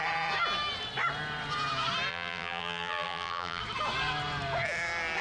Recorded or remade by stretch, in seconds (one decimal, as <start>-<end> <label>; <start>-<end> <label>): 0.0-2.1 recorded; 2.1-3.6 remade; 3.6-5.2 recorded